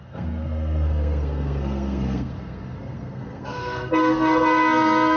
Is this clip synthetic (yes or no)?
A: yes